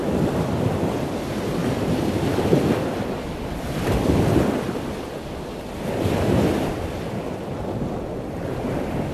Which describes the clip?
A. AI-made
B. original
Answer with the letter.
B